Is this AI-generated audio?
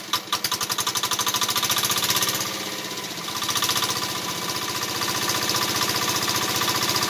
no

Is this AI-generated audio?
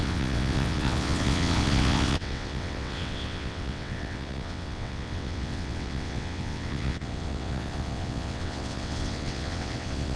yes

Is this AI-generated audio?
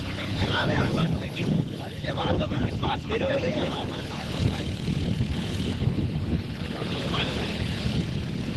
yes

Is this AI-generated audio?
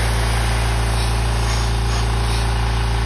no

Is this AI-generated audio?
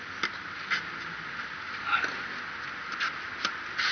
no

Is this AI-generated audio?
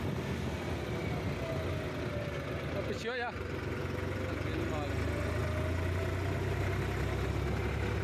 no